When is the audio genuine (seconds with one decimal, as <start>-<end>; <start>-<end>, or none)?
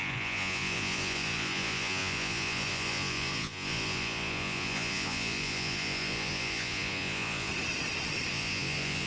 7.5-8.3